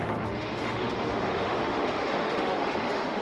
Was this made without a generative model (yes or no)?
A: no